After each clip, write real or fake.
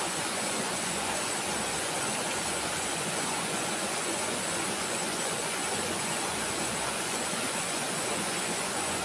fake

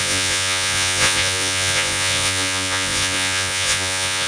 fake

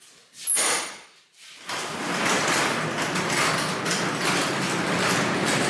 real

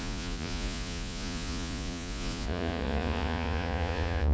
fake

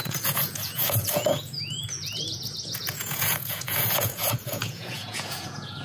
fake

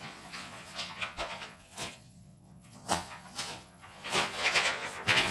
fake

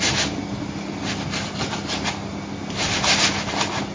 real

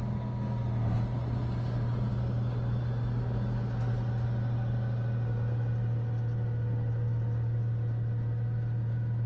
real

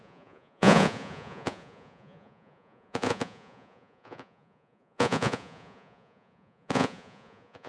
fake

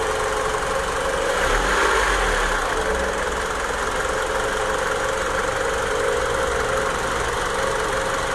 real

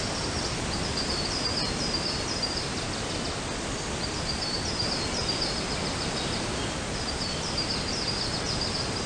real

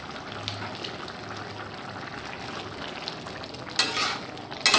real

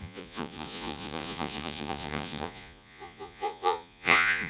fake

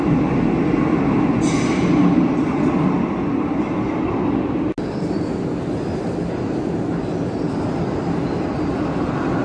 real